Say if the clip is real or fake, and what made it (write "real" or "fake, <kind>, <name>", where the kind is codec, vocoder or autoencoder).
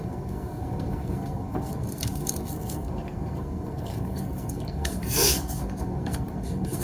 fake, codec, SNAC